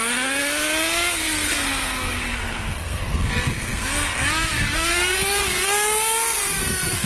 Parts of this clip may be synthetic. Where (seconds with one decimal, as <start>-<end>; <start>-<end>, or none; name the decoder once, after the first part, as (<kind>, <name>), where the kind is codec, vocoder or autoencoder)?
0.0-0.4 (codec, SNAC); 1.1-7.1